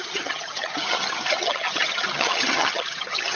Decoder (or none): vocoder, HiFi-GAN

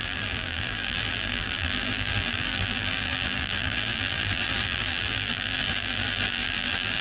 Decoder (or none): vocoder, BigVGAN v2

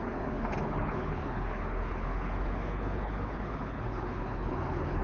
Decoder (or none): codec, HILCodec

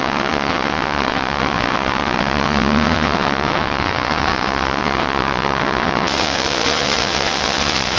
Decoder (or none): vocoder, WaveNeXt